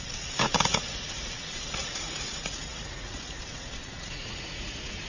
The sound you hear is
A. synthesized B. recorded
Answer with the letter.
A